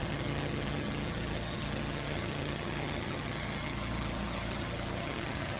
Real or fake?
fake